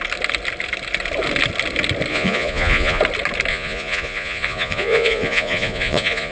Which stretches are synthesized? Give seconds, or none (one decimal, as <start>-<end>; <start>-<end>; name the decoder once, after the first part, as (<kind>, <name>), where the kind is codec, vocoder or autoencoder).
2.1-3.0 (vocoder, Vocos); 3.5-6.3